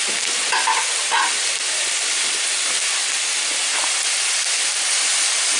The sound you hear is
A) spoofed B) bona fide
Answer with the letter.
B